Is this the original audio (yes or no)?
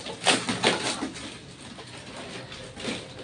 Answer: yes